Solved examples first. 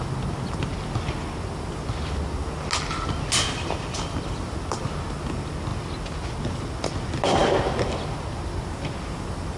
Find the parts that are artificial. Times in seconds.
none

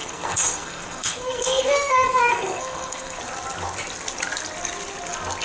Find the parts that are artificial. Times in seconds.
0.0-3.2 (codec, SNAC)